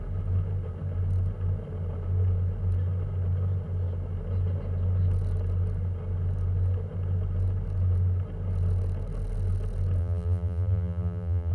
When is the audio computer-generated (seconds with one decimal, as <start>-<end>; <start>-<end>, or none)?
10.0-11.5